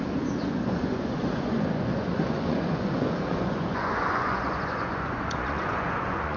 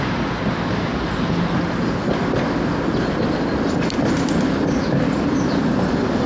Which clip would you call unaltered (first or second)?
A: second